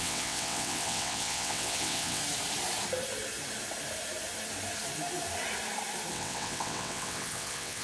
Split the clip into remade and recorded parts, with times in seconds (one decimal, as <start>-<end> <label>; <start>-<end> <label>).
0.0-2.2 remade; 2.2-6.1 recorded; 6.1-7.8 remade